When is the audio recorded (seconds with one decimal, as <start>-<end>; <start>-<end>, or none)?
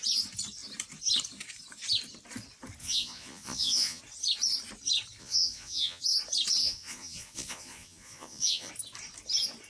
0.0-2.8; 4.0-5.2; 6.0-6.6; 8.7-9.7